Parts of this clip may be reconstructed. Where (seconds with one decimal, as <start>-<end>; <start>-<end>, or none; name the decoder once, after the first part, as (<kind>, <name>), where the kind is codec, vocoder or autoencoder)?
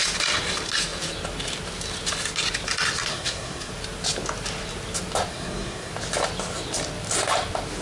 3.1-3.7 (codec, SNAC); 5.3-5.9